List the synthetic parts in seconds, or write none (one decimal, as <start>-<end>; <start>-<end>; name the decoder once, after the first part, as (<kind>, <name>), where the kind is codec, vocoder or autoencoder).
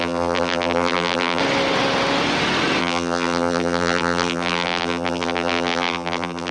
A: 0.0-1.4 (vocoder, BigVGAN v2); 2.8-6.5